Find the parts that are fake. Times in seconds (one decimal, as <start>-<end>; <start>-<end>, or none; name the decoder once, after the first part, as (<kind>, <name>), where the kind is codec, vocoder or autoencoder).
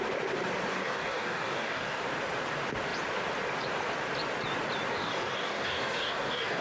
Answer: 0.7-2.0 (codec, DAC); 4.9-6.6